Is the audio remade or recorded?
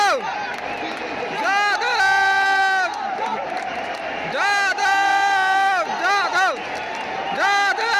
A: recorded